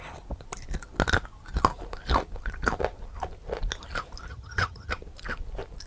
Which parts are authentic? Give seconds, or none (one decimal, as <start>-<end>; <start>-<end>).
0.0-4.3; 4.9-5.9